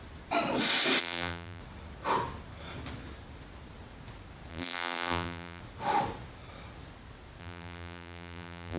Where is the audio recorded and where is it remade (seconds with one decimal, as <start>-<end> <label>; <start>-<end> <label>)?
0.0-1.0 recorded; 1.0-1.6 remade; 1.6-4.5 recorded; 4.5-5.6 remade; 5.6-7.4 recorded; 7.4-8.8 remade